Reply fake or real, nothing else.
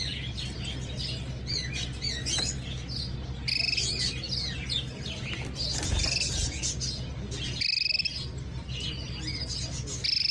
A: real